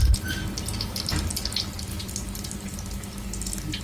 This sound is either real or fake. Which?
real